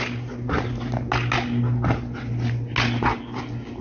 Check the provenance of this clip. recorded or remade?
recorded